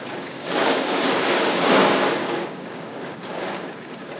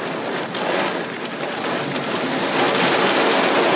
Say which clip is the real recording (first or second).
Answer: second